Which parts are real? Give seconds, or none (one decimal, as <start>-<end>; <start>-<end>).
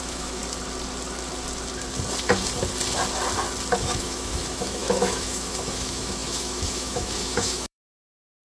0.4-3.7